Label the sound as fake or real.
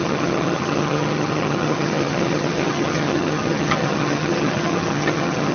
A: fake